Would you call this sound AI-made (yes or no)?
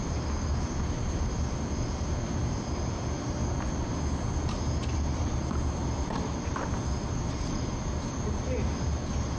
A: no